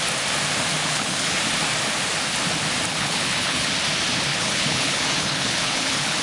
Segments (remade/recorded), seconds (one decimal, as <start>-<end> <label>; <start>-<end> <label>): 0.0-0.8 recorded; 0.8-1.4 remade; 1.4-2.9 recorded; 2.9-3.7 remade; 3.7-4.3 recorded; 4.3-6.2 remade